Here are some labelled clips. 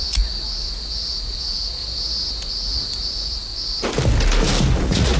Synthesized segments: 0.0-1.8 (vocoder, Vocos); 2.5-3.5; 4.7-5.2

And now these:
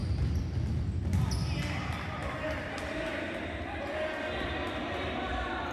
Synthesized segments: none

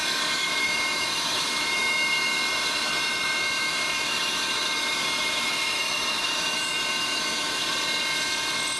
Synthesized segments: 0.0-7.6 (autoencoder, DAC-VAE)

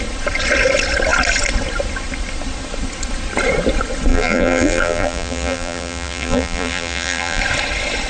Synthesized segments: 4.1-7.4 (vocoder, BigVGAN v2)